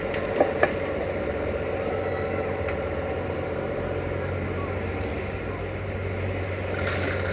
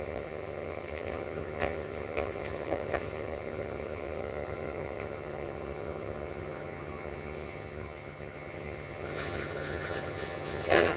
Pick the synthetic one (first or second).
second